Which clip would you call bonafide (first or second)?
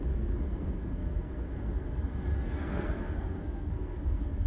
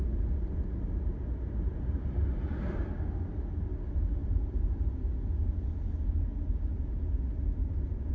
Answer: second